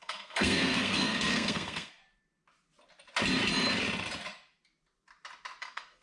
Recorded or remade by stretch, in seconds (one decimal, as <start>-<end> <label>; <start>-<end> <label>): 0.0-2.0 remade; 2.0-5.6 recorded; 5.6-6.0 remade